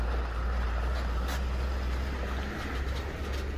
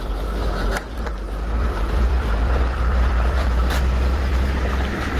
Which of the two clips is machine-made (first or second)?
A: second